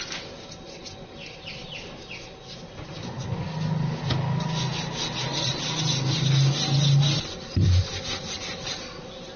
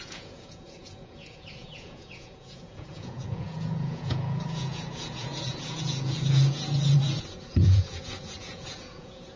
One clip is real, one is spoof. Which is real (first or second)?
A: first